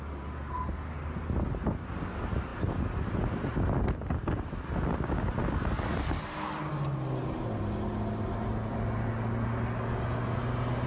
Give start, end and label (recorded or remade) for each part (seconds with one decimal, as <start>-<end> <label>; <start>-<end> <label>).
0.0-10.9 recorded